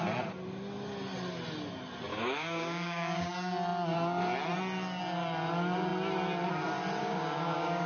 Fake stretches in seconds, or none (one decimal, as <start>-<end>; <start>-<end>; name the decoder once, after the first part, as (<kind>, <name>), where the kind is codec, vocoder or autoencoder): 2.1-3.3 (codec, DAC); 7.0-7.9